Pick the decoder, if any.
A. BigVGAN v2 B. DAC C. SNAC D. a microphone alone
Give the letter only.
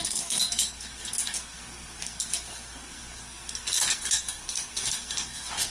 C